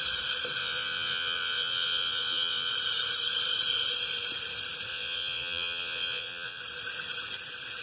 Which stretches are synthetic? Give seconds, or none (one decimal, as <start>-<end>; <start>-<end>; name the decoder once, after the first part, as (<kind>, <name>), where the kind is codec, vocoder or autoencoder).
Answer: 0.6-2.7 (vocoder, Vocos); 4.9-6.6